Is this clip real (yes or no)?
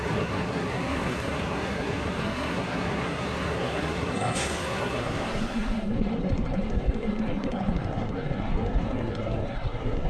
no